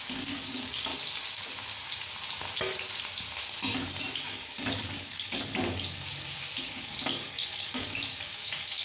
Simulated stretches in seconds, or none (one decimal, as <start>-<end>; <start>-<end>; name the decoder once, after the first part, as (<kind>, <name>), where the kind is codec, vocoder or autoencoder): 0.0-0.9 (codec, DAC); 4.3-6.1; 6.6-8.8